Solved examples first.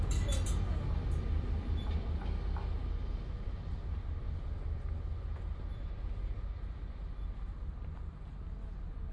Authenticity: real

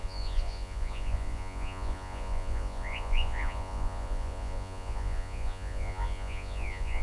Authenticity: fake